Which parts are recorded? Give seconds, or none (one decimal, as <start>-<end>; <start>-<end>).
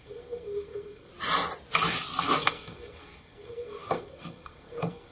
1.1-2.4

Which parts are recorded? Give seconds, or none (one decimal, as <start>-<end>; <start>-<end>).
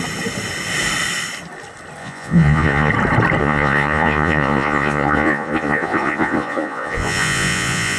0.0-2.0; 2.9-3.4